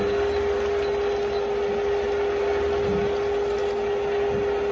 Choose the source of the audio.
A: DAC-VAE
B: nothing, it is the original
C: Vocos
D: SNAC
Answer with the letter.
B